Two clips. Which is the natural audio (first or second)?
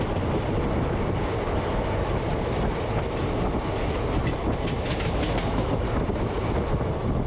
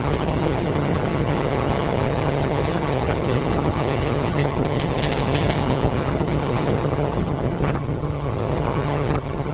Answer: first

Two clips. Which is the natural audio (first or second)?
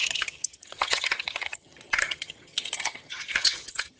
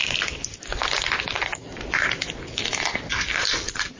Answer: second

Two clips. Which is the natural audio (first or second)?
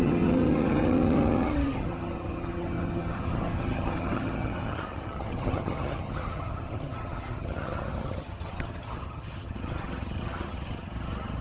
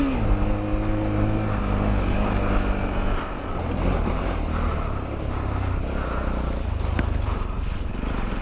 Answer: second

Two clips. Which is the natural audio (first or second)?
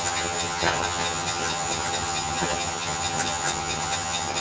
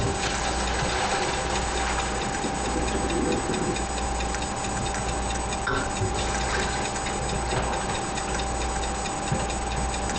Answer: second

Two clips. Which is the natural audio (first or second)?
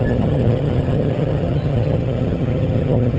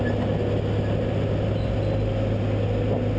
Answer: second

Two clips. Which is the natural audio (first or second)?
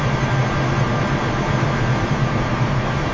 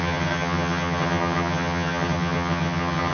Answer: first